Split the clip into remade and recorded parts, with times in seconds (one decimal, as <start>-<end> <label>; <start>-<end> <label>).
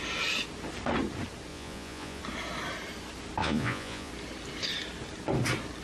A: 0.0-1.5 recorded; 1.5-2.2 remade; 2.2-3.4 recorded; 3.4-4.1 remade; 4.1-5.8 recorded